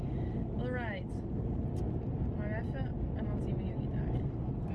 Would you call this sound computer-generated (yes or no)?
no